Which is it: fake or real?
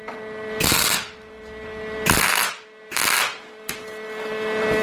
real